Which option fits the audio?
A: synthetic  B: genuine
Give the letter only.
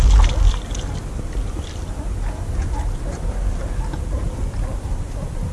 B